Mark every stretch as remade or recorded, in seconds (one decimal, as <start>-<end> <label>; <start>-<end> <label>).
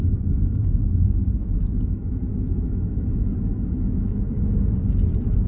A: 0.0-1.2 recorded; 1.2-4.5 remade; 4.5-5.5 recorded